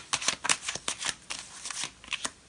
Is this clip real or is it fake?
real